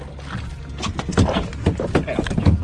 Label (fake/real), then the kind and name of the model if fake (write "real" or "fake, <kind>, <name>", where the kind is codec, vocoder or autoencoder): real